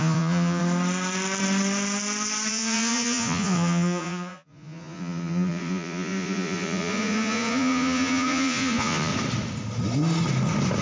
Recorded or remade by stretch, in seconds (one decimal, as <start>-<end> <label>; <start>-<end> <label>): 0.0-0.6 remade; 0.6-2.5 recorded; 2.5-9.1 remade; 9.1-10.8 recorded